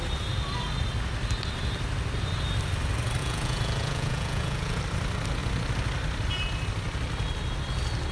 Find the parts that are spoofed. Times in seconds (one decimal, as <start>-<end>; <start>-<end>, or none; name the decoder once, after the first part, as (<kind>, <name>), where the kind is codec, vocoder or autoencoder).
3.2-4.8 (vocoder, Vocos)